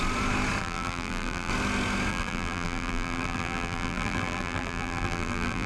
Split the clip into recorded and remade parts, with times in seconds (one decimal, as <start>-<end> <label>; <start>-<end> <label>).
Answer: 0.0-0.6 recorded; 0.6-1.5 remade; 1.5-2.1 recorded; 2.1-5.7 remade